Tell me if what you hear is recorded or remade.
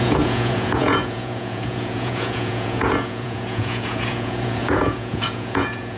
remade